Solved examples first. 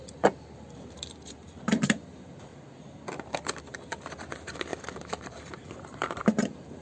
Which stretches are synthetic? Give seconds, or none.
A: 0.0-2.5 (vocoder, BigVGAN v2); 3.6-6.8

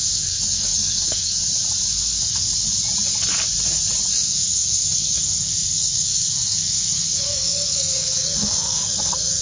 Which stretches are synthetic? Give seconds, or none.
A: 0.0-1.4 (codec, SNAC); 1.9-2.5; 4.1-9.4

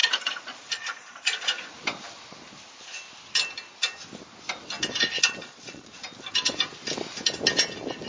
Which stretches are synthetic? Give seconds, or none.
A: 0.0-1.7 (vocoder, Vocos); 5.4-6.0

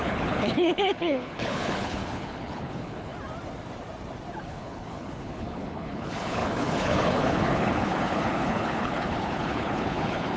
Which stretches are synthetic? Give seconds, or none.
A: 0.0-3.1 (codec, HILCodec); 4.4-10.4

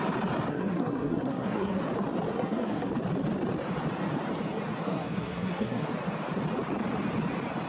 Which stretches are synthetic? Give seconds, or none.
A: 0.5-1.8 (codec, SNAC); 2.3-2.9; 4.8-5.9

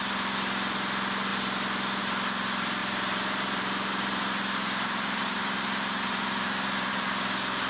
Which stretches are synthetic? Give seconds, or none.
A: 2.8-6.9 (vocoder, BigVGAN v2)

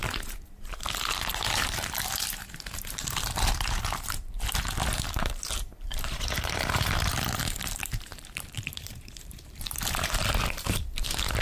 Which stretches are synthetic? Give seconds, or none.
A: 0.0-11.4 (vocoder, BigVGAN v2)